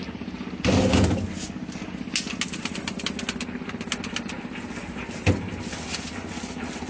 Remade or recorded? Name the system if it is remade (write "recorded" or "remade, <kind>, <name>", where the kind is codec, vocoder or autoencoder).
recorded